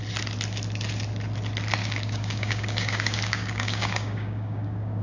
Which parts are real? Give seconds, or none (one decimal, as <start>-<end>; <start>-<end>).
0.0-1.8